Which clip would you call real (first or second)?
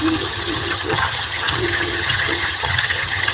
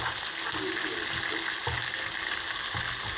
second